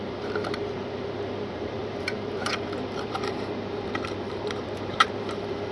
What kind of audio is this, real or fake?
fake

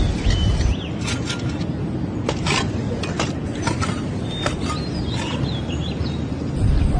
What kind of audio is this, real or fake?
real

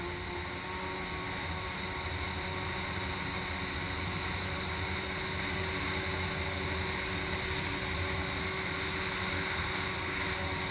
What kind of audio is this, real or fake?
real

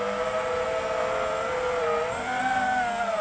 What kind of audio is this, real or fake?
real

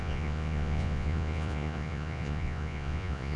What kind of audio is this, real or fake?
fake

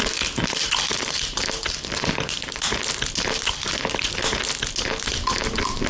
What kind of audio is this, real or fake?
real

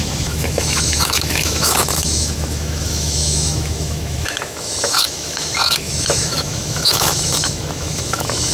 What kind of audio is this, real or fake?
fake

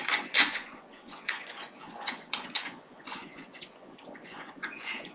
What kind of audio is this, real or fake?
fake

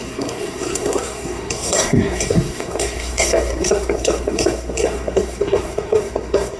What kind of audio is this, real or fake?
fake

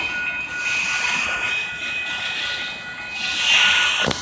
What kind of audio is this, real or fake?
real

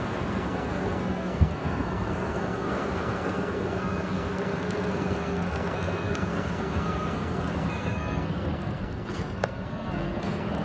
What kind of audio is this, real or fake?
fake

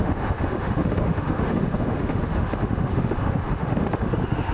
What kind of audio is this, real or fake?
fake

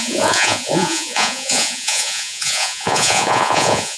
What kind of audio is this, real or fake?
fake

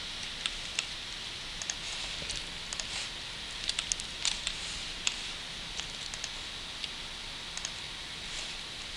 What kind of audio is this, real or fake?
real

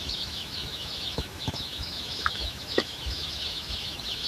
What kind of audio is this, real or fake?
fake